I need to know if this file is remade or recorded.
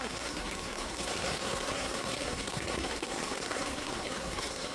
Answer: remade